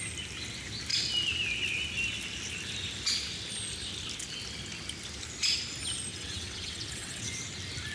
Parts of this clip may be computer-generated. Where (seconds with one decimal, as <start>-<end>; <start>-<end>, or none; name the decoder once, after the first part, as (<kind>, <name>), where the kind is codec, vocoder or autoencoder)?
6.1-7.4 (vocoder, WaveNeXt)